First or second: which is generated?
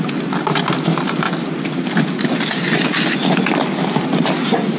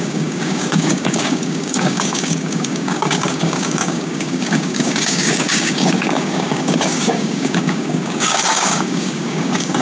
second